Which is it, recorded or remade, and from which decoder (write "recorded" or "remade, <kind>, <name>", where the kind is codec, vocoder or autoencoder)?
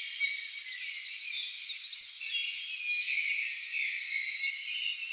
recorded